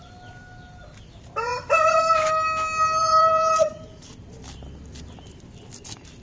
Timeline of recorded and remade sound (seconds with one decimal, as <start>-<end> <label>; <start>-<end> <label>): 0.0-1.5 recorded; 1.5-2.0 remade; 2.0-3.0 recorded; 3.0-4.1 remade; 4.1-6.2 recorded